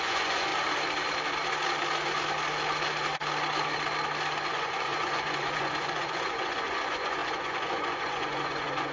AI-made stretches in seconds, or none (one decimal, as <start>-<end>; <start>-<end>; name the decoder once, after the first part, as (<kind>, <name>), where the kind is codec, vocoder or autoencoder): 0.0-0.5 (vocoder, Vocos); 4.5-8.9